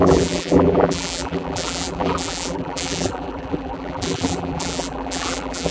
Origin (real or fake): fake